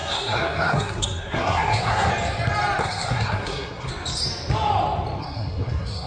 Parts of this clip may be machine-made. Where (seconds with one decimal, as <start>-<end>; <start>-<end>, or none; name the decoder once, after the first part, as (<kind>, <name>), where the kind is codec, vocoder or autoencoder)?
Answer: 0.0-2.1 (codec, SNAC); 2.8-3.9; 5.2-6.1